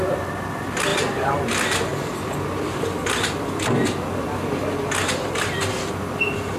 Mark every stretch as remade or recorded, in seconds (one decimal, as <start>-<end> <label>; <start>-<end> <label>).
0.0-0.9 recorded; 0.9-1.4 remade; 1.4-6.6 recorded